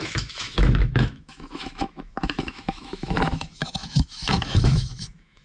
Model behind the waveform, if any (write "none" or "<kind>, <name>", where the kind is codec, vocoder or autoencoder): autoencoder, DAC-VAE